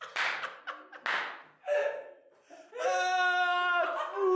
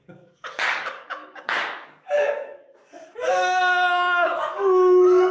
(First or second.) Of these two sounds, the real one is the first